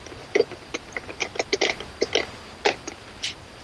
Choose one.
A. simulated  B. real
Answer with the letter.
B